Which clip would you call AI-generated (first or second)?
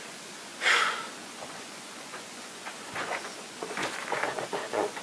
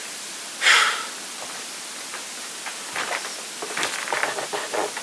first